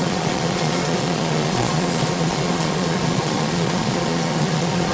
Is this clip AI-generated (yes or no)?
yes